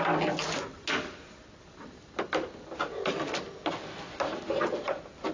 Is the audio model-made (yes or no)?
no